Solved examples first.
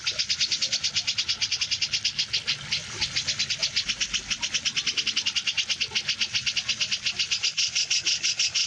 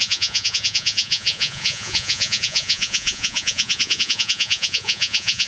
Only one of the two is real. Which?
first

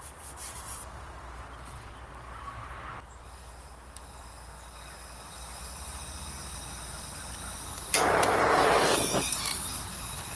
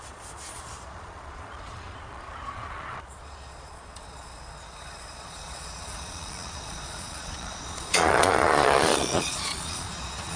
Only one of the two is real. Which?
first